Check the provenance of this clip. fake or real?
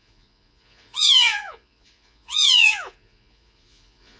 fake